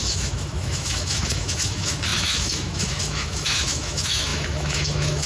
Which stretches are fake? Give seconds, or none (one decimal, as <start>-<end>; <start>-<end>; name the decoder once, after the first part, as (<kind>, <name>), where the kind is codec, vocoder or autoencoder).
0.0-5.3 (autoencoder, DAC-VAE)